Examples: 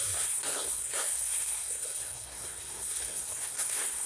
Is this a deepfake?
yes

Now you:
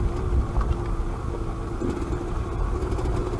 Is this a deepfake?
no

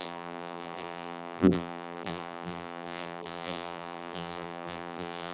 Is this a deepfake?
yes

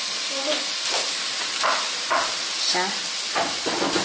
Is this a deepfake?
no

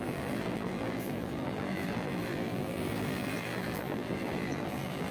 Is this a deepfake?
yes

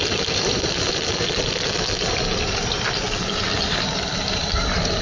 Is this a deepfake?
no